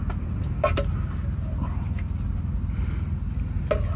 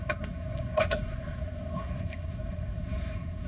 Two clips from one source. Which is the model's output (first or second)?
second